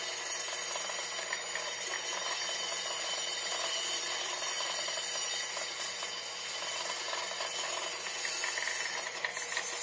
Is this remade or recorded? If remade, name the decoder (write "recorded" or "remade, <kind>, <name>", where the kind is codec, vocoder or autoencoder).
recorded